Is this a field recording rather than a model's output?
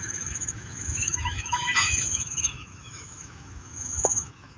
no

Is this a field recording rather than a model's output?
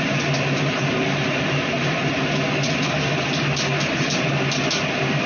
no